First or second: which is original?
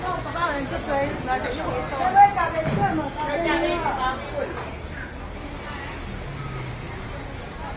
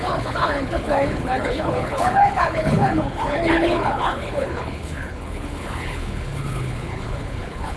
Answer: first